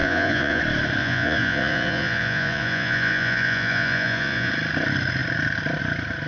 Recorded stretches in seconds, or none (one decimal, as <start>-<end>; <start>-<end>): 0.6-1.0; 4.5-6.3

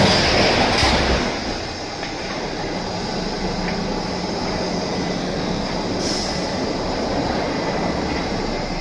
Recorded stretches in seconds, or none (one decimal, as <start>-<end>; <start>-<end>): 0.0-5.2; 5.7-8.8

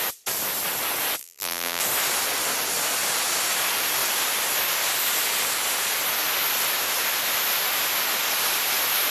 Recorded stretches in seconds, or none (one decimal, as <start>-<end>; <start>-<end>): 0.0-1.2; 1.8-9.1